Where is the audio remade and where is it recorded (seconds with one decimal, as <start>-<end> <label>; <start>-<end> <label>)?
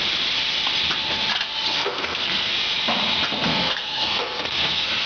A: 0.0-1.7 recorded; 1.7-2.5 remade; 2.5-3.5 recorded; 3.5-5.1 remade